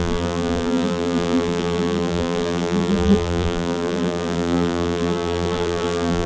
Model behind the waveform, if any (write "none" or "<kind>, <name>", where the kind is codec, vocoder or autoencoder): vocoder, BigVGAN v2